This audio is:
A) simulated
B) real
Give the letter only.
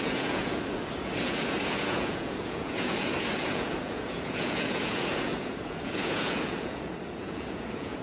A